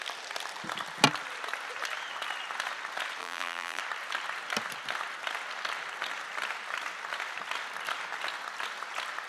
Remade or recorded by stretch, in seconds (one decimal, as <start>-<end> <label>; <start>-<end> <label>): 0.0-3.2 recorded; 3.2-3.8 remade; 3.8-9.3 recorded